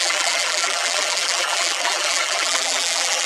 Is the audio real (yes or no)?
no